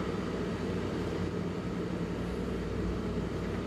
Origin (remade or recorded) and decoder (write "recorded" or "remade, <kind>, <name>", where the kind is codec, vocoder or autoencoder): remade, vocoder, BigVGAN v2